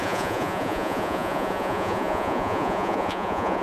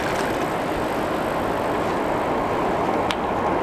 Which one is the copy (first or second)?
first